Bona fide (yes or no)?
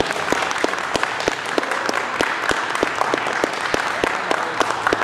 yes